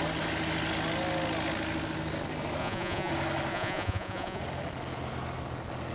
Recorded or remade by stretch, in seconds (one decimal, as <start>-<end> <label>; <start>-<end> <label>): 0.0-2.6 recorded; 2.6-3.1 remade; 3.1-3.5 recorded; 3.5-4.4 remade; 4.4-5.9 recorded